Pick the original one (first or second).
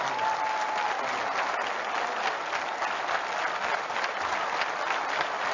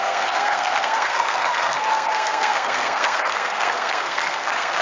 first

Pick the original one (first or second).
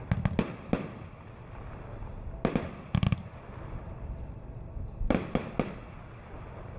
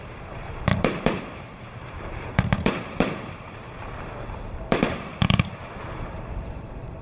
first